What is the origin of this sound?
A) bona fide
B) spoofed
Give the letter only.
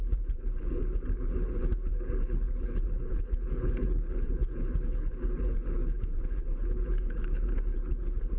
B